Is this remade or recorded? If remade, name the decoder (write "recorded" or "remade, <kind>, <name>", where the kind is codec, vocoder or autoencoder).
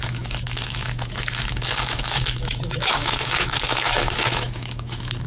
remade, autoencoder, DAC-VAE